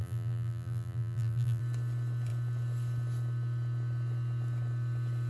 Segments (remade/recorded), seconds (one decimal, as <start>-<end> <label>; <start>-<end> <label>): 0.0-1.6 remade; 1.6-5.3 recorded